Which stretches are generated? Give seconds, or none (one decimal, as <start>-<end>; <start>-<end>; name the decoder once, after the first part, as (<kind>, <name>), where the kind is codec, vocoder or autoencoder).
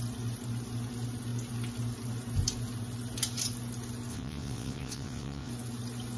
4.1-5.5 (vocoder, WaveNeXt)